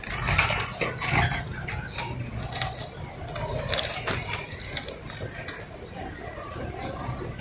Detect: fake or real real